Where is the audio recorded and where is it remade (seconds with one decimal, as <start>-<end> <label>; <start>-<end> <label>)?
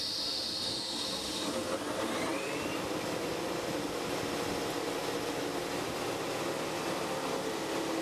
0.0-8.0 recorded